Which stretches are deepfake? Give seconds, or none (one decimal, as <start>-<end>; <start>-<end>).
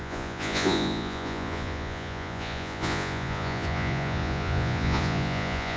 0.0-5.8